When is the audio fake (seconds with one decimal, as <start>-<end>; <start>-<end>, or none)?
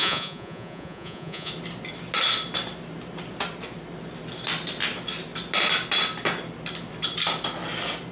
0.0-1.5